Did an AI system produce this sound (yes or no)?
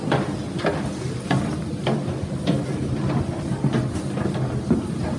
no